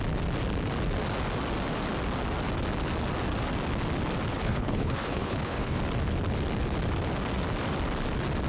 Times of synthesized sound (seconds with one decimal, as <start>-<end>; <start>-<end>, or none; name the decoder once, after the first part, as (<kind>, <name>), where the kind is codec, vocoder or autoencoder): 4.3-5.8 (codec, HILCodec)